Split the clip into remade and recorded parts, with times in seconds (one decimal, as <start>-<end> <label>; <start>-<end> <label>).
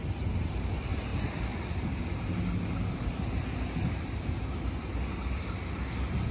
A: 0.0-6.3 recorded